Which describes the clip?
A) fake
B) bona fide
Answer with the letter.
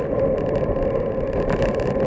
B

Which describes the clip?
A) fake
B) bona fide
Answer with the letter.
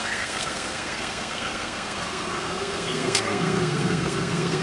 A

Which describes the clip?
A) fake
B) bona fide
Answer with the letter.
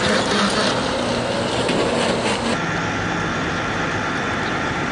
B